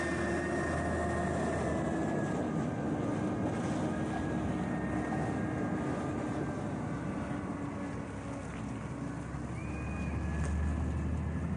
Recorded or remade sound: recorded